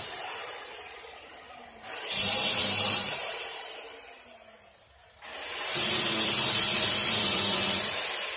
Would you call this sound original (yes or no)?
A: no